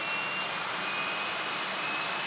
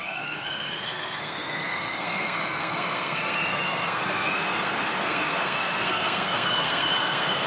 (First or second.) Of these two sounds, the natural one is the first